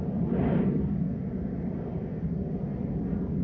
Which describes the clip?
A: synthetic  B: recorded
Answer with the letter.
B